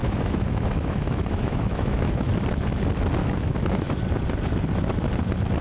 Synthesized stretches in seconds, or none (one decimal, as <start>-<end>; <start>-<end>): 0.0-2.3; 3.2-3.9